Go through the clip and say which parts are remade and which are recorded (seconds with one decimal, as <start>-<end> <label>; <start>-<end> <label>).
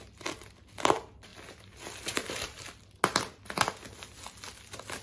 0.0-5.0 recorded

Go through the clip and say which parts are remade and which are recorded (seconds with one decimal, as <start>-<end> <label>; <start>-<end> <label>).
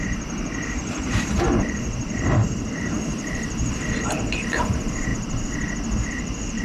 0.0-5.1 remade; 5.1-6.0 recorded; 6.0-6.6 remade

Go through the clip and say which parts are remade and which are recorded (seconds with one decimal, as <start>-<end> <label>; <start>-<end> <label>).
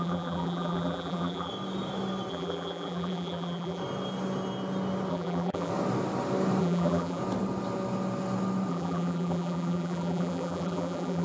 0.0-1.5 remade; 1.5-2.3 recorded; 2.3-3.8 remade; 3.8-5.1 recorded; 5.1-5.7 remade; 5.7-6.6 recorded; 6.6-7.2 remade; 7.2-8.7 recorded; 8.7-11.2 remade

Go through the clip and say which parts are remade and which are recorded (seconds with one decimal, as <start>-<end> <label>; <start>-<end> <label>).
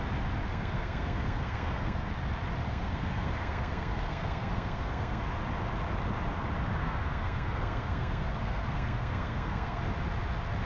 0.0-0.5 recorded; 0.5-2.1 remade; 2.1-2.7 recorded; 2.7-5.2 remade; 5.2-6.8 recorded; 6.8-9.8 remade; 9.8-10.7 recorded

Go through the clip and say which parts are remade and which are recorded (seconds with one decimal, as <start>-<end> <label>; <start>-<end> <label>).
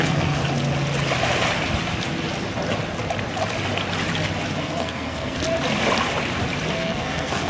0.0-0.4 remade; 0.4-4.6 recorded; 4.6-5.4 remade; 5.4-6.7 recorded; 6.7-7.5 remade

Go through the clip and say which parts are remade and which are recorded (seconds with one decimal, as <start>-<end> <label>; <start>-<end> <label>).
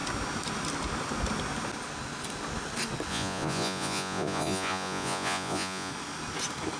0.0-3.1 recorded; 3.1-5.9 remade; 5.9-6.8 recorded